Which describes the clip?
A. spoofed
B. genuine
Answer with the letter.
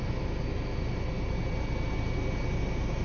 B